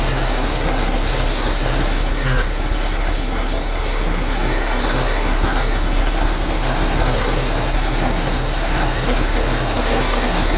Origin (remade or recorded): remade